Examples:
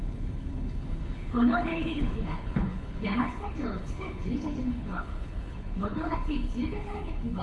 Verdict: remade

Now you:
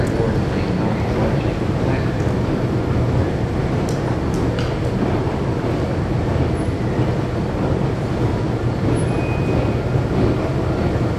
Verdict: recorded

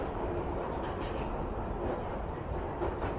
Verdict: recorded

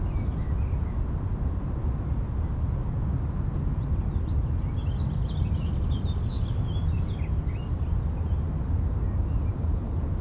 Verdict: recorded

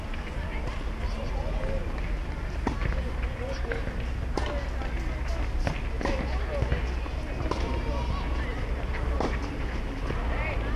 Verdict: recorded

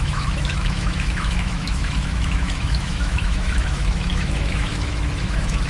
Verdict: remade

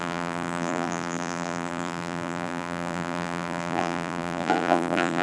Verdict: remade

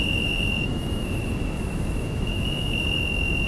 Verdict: remade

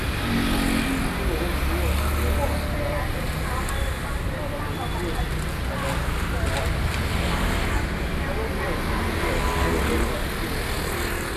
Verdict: recorded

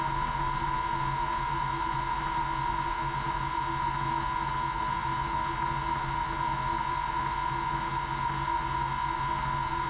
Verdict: recorded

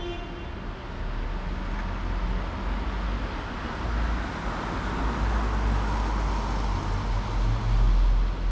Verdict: recorded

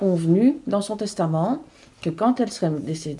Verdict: recorded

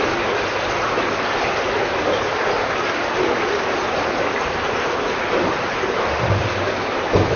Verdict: recorded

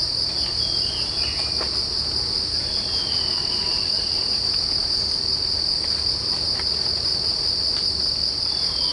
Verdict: recorded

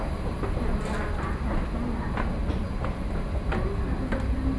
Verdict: recorded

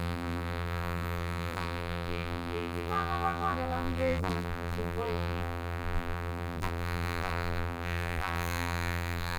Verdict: remade